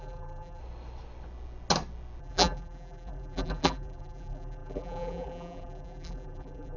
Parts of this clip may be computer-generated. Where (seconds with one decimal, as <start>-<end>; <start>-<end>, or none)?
0.0-0.6; 2.2-6.8